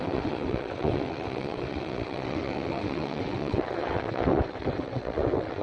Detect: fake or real fake